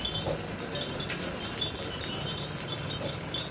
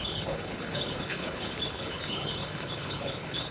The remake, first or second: second